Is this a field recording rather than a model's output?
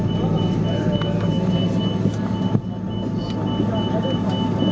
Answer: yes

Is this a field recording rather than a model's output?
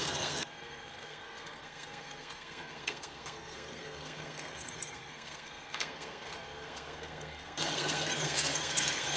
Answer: no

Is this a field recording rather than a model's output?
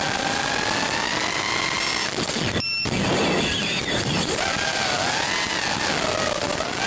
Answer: yes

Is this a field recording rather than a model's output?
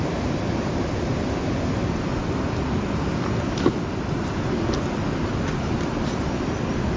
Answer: yes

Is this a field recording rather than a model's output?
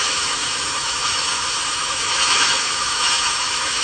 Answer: no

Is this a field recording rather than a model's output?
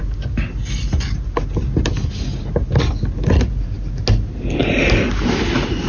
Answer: yes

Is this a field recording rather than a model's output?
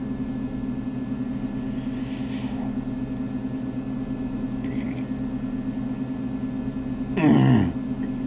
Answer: yes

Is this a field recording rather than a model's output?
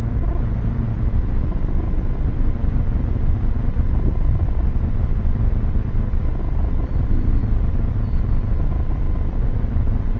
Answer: yes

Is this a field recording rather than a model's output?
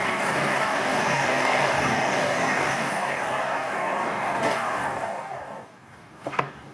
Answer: no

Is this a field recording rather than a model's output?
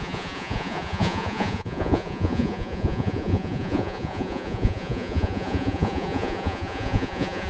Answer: no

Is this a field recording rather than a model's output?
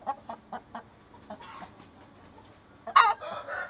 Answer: yes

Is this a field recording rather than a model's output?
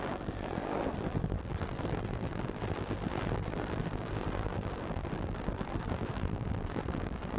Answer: no